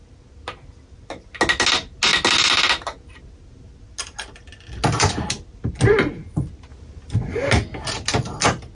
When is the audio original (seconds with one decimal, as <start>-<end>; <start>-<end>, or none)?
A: 0.0-8.7